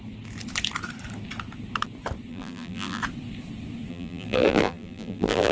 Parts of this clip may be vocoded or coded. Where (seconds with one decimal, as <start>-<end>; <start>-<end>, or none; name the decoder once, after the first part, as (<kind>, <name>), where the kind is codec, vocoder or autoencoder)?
2.3-3.0 (vocoder, BigVGAN v2); 3.9-5.5